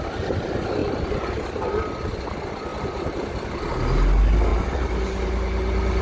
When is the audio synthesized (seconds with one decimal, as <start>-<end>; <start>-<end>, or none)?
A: 0.8-1.7; 2.7-3.6; 4.5-6.0